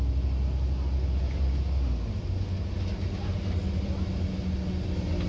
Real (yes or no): yes